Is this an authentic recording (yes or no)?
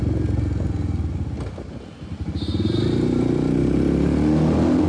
yes